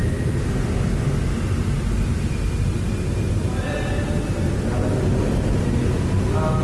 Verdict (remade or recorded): recorded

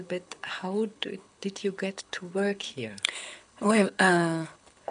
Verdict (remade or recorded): remade